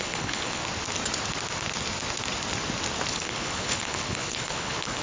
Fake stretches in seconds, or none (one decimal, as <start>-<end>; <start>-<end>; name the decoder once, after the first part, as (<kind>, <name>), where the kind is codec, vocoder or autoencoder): 0.0-0.6 (codec, HILCodec); 3.1-5.0